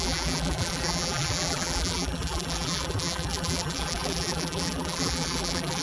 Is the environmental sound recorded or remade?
remade